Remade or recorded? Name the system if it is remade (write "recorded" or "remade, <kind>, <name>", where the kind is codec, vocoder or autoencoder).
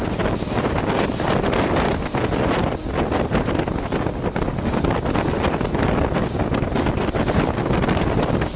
recorded